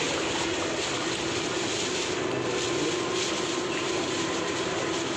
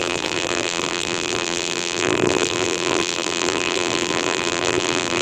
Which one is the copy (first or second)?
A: second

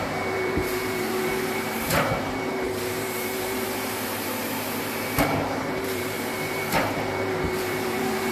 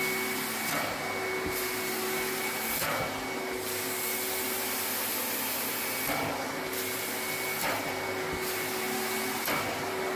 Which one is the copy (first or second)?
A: first